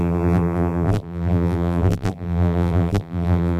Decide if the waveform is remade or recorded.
remade